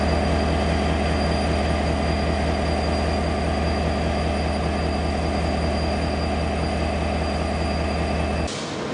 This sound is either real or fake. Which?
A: real